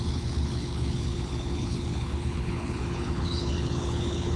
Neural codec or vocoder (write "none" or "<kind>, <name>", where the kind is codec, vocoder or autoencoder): codec, HILCodec